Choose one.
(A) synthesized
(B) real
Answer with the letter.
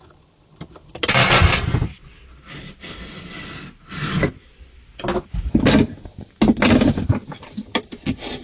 B